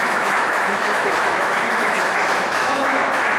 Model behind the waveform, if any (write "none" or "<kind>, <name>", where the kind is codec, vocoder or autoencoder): autoencoder, DAC-VAE